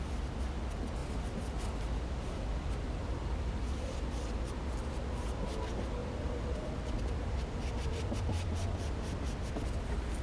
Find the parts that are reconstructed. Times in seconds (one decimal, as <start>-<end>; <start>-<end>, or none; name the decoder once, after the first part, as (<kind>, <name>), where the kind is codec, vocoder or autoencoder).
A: 1.0-4.6 (vocoder, BigVGAN v2); 6.0-10.2